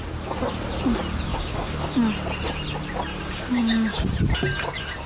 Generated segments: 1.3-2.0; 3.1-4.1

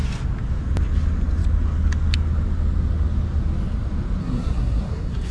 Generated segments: 4.2-5.3

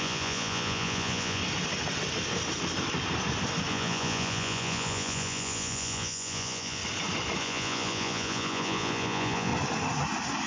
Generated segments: 0.0-1.4; 3.7-6.8; 7.4-9.5

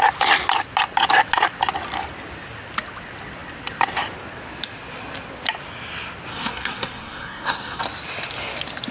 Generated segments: 6.3-7.8

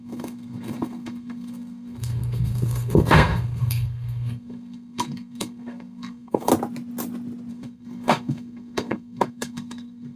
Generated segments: 0.0-6.5; 7.5-10.2

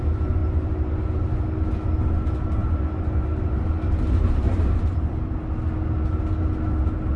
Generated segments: none

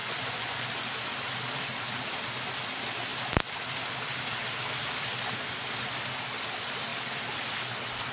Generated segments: 0.0-0.7